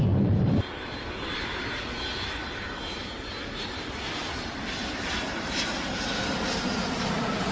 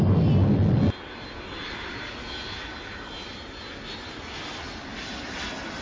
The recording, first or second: second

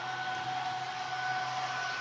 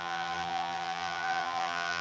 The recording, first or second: first